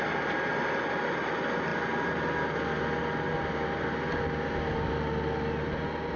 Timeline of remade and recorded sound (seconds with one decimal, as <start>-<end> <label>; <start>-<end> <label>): 0.0-6.2 recorded